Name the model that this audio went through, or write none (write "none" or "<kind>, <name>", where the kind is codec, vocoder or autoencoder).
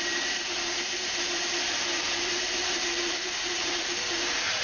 vocoder, BigVGAN v2